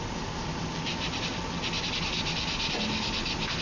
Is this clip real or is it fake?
real